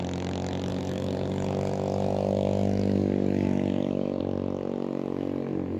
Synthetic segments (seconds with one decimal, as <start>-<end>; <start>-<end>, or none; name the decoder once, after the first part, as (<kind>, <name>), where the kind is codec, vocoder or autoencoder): 0.7-4.2 (codec, DAC)